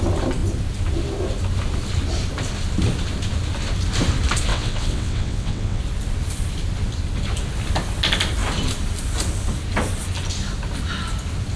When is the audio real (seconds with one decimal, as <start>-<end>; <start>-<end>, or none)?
0.0-4.5; 5.8-11.6